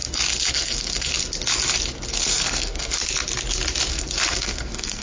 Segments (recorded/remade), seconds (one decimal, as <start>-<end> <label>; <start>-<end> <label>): 0.0-0.5 recorded; 0.5-1.1 remade; 1.1-2.1 recorded; 2.1-3.0 remade; 3.0-3.9 recorded; 3.9-5.0 remade